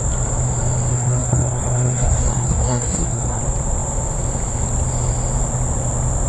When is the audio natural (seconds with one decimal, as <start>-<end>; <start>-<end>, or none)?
0.0-0.9; 3.4-6.3